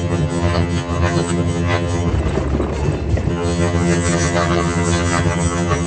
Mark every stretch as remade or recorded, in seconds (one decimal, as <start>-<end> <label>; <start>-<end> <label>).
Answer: 0.0-2.1 remade; 2.1-3.3 recorded; 3.3-5.9 remade